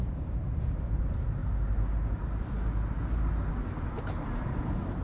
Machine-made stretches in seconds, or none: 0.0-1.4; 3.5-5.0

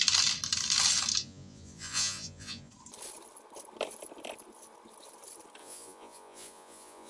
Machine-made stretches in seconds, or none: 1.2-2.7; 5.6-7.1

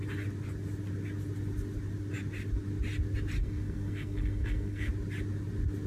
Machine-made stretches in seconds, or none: 3.4-4.9

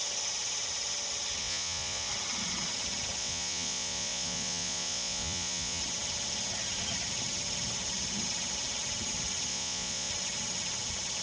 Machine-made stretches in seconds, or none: 1.4-2.1; 3.2-5.8; 9.5-10.1

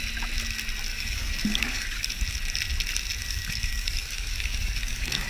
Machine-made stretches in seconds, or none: 0.9-2.2; 3.2-5.3

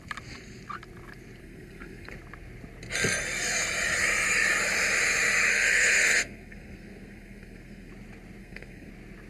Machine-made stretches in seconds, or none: 1.4-2.1; 5.5-7.9; 8.4-8.9

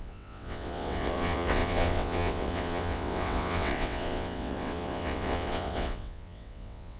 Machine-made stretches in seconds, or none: 0.0-7.0